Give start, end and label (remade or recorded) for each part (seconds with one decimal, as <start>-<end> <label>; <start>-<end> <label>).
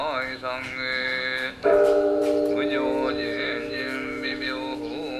0.0-2.2 remade; 2.2-3.1 recorded; 3.1-5.2 remade